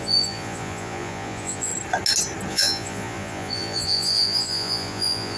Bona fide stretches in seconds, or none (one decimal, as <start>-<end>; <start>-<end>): 1.7-2.5